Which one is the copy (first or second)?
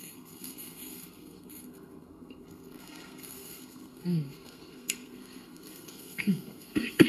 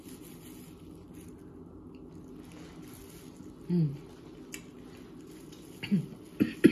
first